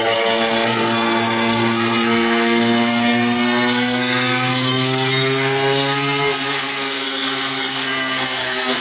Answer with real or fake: fake